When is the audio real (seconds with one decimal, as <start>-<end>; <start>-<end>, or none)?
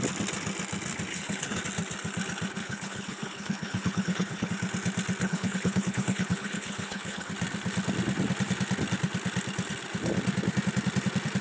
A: 0.0-1.1; 1.6-2.6; 4.5-5.2; 7.3-11.4